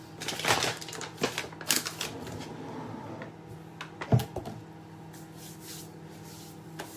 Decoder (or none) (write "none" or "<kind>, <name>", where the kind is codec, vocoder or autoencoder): none